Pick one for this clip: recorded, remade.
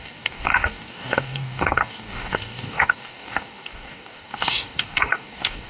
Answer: remade